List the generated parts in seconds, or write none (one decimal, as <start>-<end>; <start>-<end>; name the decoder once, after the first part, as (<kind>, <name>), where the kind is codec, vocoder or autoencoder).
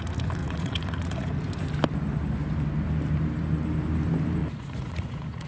0.4-1.3 (vocoder, Vocos); 4.4-5.5